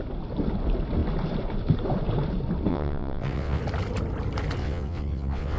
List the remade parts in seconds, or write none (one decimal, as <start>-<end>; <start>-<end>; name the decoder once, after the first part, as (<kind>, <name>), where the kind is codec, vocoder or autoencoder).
2.7-3.6 (vocoder, WaveNeXt); 4.6-5.6